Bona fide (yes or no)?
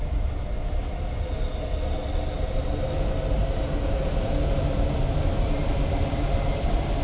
yes